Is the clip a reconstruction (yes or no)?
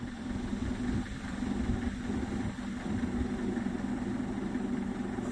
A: yes